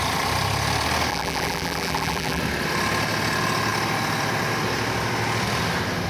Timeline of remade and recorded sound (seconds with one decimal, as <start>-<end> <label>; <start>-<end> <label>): 0.0-1.1 recorded; 1.1-2.4 remade; 2.4-6.1 recorded